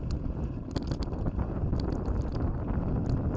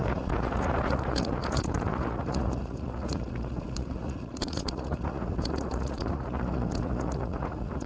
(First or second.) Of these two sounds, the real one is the first